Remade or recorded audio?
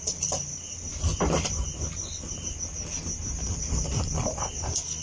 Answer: recorded